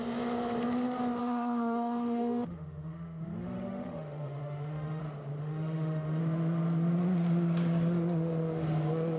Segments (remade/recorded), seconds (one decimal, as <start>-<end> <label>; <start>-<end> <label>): 0.0-1.2 recorded; 1.2-5.0 remade; 5.0-5.4 recorded; 5.4-6.2 remade; 6.2-9.2 recorded